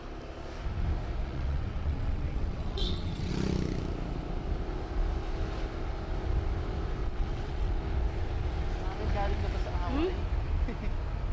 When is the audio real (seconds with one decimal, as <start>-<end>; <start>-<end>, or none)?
0.0-1.2; 3.3-7.0; 7.8-11.3